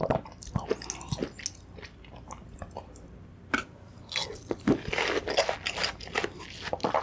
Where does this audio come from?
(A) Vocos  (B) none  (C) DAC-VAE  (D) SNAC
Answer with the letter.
B